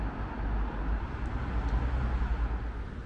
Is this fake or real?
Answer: real